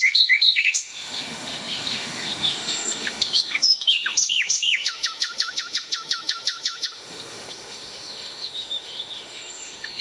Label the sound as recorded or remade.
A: remade